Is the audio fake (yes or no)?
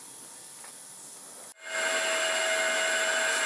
no